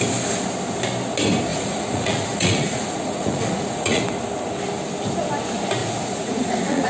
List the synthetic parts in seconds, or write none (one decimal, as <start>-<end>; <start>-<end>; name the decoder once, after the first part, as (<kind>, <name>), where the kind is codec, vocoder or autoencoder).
1.5-4.0 (vocoder, Vocos); 5.8-6.9